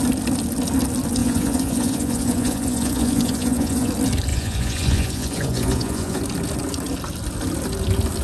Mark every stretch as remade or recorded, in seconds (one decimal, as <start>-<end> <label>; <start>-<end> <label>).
0.0-1.2 recorded; 1.2-3.9 remade; 3.9-4.3 recorded; 4.3-6.2 remade; 6.2-8.2 recorded